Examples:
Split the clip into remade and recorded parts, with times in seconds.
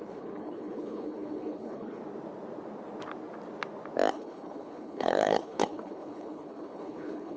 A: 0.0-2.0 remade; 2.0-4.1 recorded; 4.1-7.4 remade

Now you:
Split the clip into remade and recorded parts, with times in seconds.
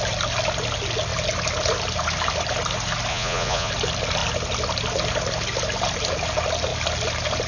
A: 0.0-3.1 recorded; 3.1-3.7 remade; 3.7-7.5 recorded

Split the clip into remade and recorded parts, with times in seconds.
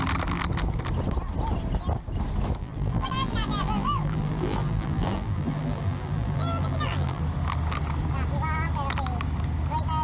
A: 0.0-2.6 recorded; 2.6-7.2 remade; 7.2-10.0 recorded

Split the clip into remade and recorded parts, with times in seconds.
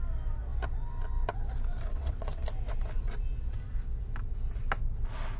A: 0.0-1.9 recorded; 1.9-2.4 remade; 2.4-5.4 recorded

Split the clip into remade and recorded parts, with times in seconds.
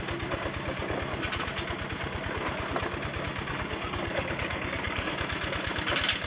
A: 0.0-3.5 recorded; 3.5-5.1 remade; 5.1-6.3 recorded